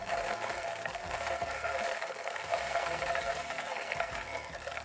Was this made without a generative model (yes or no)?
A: no